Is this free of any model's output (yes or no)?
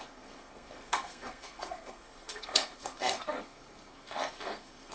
no